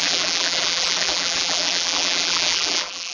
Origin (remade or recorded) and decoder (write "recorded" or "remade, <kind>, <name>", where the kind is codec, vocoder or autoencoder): remade, vocoder, BigVGAN v2